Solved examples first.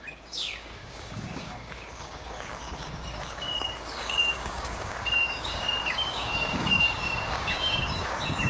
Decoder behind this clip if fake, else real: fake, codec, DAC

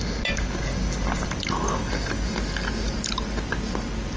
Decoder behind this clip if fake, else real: real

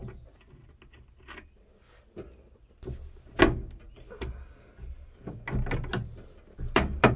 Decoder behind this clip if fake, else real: real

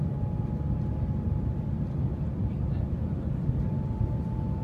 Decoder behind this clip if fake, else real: real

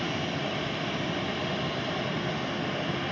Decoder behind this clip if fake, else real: real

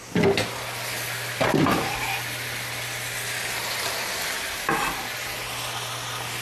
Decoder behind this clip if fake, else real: real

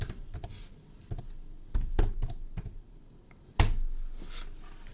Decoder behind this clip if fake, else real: real